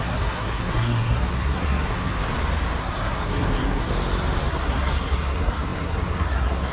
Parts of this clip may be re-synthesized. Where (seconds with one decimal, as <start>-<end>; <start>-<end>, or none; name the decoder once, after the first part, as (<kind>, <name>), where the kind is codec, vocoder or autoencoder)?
0.0-2.2 (codec, SNAC); 2.8-3.9; 4.5-6.7